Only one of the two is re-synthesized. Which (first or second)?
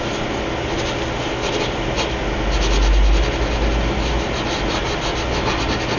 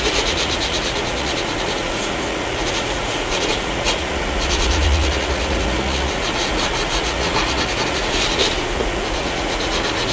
second